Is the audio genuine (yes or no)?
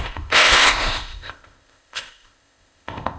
no